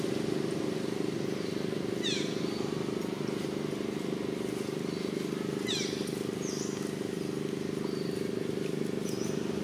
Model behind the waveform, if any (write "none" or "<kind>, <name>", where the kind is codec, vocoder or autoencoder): none